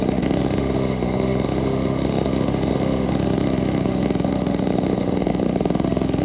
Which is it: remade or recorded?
remade